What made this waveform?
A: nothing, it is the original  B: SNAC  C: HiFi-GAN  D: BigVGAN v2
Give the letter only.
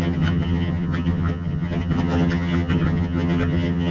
C